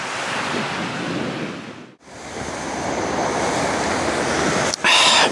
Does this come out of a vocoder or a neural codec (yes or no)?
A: no